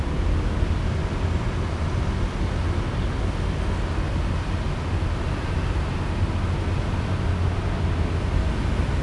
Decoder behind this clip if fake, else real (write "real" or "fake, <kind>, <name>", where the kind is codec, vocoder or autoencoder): real